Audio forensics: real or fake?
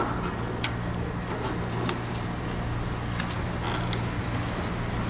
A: real